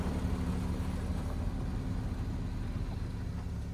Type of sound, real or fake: real